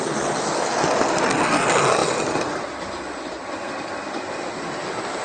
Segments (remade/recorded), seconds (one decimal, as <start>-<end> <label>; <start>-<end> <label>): 0.0-2.0 recorded; 2.0-4.2 remade; 4.2-5.2 recorded